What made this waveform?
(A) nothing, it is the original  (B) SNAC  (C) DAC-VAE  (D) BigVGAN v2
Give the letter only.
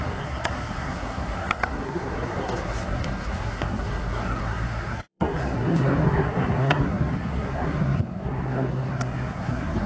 B